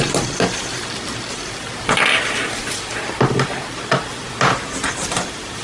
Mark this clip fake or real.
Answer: real